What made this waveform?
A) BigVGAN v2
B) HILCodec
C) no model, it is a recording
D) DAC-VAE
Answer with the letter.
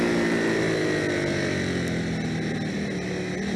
C